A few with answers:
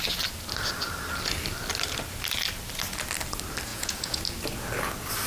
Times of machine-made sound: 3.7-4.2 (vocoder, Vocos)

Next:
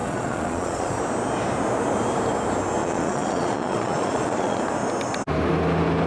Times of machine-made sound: 0.0-1.0 (vocoder, Vocos); 2.8-4.6

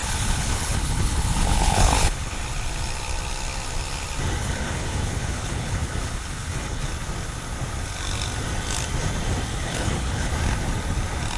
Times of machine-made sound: 0.0-2.3 (codec, HILCodec); 4.4-6.9; 9.5-10.3

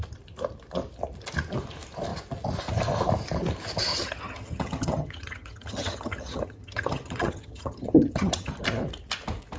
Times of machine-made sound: 3.9-8.6 (vocoder, HiFi-GAN)